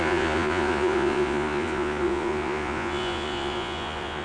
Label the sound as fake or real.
fake